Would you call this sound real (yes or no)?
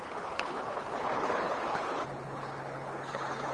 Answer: no